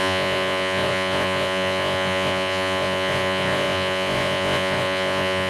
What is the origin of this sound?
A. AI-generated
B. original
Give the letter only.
A